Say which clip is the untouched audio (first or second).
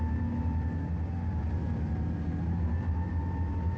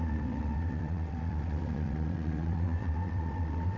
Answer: first